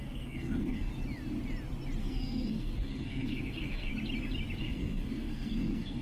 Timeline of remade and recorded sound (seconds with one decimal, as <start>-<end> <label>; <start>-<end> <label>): 0.0-0.9 remade; 0.9-2.0 recorded; 2.0-3.9 remade; 3.9-4.6 recorded; 4.6-6.0 remade